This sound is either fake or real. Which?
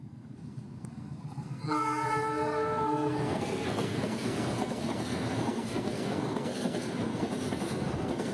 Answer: fake